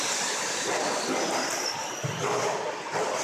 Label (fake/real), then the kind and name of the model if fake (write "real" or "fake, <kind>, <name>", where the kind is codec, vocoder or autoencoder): real